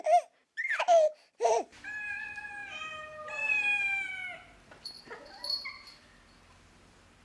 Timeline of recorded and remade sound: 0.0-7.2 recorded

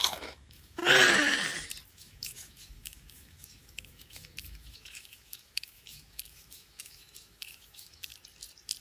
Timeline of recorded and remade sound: 0.0-0.8 remade; 0.8-1.9 recorded; 1.9-8.1 remade; 8.1-8.8 recorded

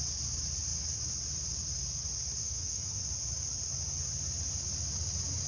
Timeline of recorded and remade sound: 0.0-2.4 recorded; 2.4-3.0 remade; 3.0-5.5 recorded

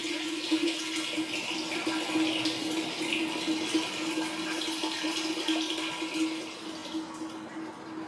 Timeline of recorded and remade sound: 0.0-0.8 remade; 0.8-8.1 recorded

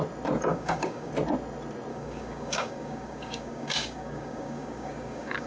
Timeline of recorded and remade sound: 0.0-0.5 recorded; 0.5-1.1 remade; 1.1-1.9 recorded; 1.9-5.5 remade

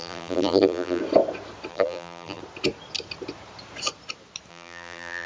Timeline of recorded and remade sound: 0.0-1.0 remade; 1.0-1.7 recorded; 1.7-2.4 remade; 2.4-4.5 recorded; 4.5-5.3 remade